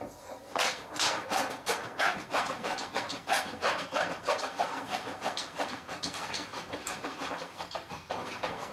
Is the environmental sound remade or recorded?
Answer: remade